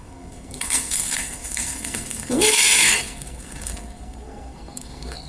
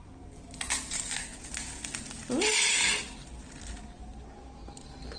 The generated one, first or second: first